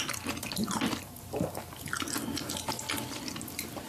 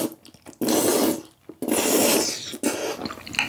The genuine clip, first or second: second